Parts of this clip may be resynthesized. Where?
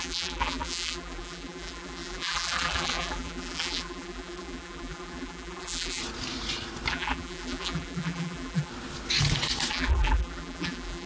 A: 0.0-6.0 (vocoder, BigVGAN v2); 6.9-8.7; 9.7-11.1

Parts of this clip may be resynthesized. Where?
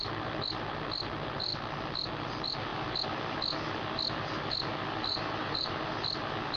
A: 5.1-5.9 (vocoder, BigVGAN v2)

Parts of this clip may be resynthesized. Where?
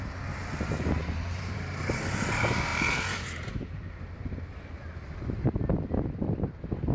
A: 1.0-1.8 (vocoder, BigVGAN v2); 2.7-4.2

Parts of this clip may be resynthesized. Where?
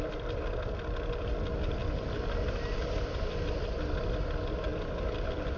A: none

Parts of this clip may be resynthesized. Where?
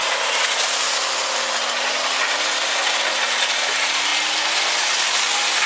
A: 3.4-4.1 (vocoder, BigVGAN v2); 4.8-5.7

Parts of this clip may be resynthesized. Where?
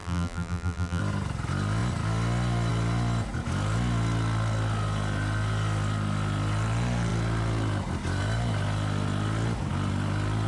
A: 0.0-1.0 (vocoder, BigVGAN v2)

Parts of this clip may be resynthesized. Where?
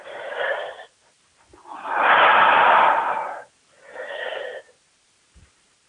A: 0.0-2.3 (vocoder, BigVGAN v2); 4.1-5.9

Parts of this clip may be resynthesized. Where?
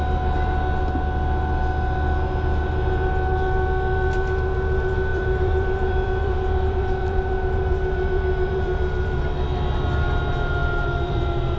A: 5.1-9.2 (vocoder, BigVGAN v2); 10.6-11.2